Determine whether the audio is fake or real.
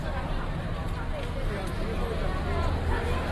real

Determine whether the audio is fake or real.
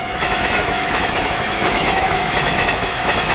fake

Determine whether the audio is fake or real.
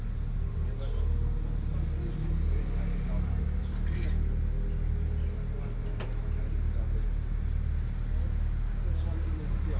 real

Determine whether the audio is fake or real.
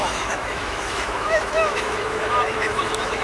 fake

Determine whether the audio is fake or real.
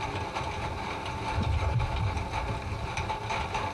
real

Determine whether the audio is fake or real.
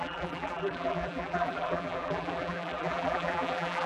fake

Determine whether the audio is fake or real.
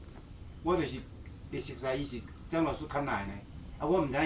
real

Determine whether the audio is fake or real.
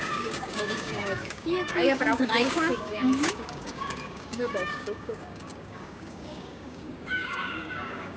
fake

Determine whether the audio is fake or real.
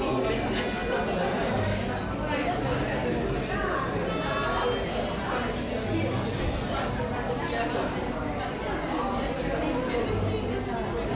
real